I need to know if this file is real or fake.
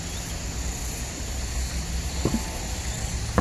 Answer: real